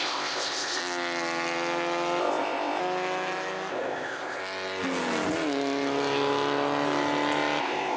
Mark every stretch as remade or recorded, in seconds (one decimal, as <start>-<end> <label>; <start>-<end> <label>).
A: 0.0-0.8 remade; 0.8-2.2 recorded; 2.2-2.8 remade; 2.8-3.7 recorded; 3.7-4.4 remade; 4.4-7.6 recorded; 7.6-8.0 remade